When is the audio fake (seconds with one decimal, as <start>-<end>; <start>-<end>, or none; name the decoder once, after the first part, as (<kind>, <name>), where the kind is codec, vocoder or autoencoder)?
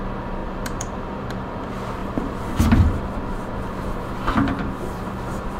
0.4-1.5 (vocoder, BigVGAN v2); 2.0-3.0; 4.6-5.6